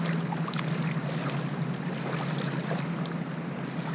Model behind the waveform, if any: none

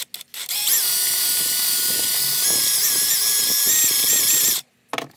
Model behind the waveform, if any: none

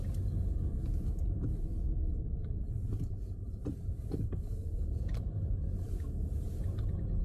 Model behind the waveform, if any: vocoder, BigVGAN v2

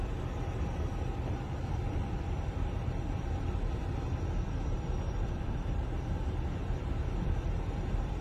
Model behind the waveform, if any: vocoder, BigVGAN v2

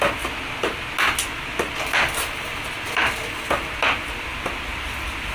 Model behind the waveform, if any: none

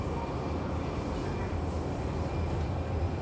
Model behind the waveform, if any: none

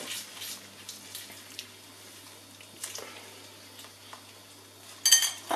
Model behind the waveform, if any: none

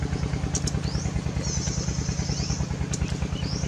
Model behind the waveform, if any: none